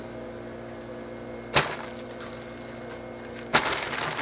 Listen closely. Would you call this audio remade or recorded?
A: recorded